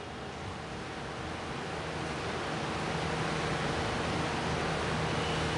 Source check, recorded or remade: recorded